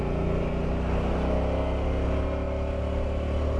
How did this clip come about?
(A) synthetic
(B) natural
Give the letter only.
B